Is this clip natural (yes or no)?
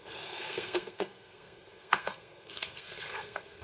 no